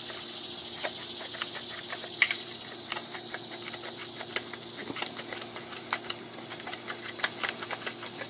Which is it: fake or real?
real